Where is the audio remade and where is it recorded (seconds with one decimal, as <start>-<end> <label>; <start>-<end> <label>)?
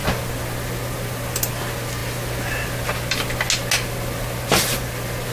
0.0-5.3 recorded